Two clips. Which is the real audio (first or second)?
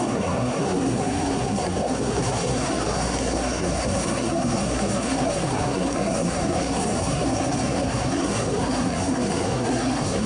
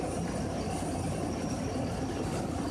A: second